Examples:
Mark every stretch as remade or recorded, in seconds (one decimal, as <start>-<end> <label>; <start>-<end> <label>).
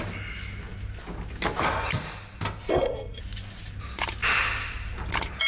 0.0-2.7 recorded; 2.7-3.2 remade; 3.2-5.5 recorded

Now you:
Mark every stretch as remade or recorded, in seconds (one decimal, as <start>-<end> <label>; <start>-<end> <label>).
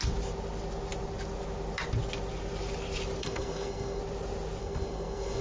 0.0-3.2 recorded; 3.2-4.0 remade; 4.0-4.6 recorded; 4.6-5.4 remade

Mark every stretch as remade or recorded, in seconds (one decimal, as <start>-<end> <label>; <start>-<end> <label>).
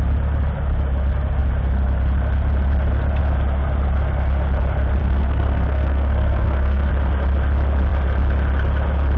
0.0-5.0 recorded; 5.0-6.9 remade; 6.9-9.2 recorded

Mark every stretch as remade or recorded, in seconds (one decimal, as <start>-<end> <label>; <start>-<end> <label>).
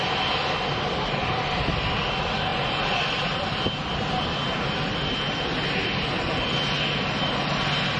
0.0-8.0 recorded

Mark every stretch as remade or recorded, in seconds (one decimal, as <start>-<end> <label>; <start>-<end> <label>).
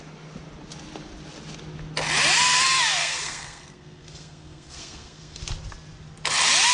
0.0-3.0 recorded; 3.0-5.4 remade; 5.4-6.7 recorded